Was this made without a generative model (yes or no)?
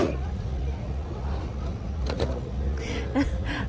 no